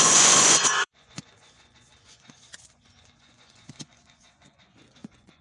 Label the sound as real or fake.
fake